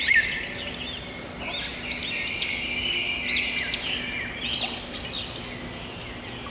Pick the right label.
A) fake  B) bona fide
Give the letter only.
B